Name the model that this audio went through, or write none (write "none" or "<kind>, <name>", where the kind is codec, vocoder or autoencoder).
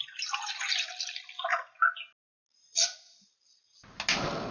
none